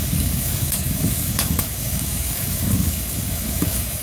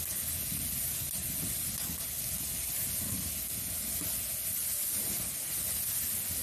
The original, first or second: second